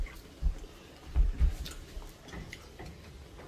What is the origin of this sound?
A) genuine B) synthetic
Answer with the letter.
B